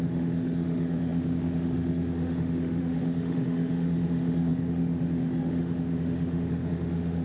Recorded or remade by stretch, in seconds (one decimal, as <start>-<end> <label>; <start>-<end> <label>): 0.0-7.2 remade